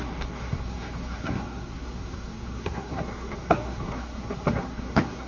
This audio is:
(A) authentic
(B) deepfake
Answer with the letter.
B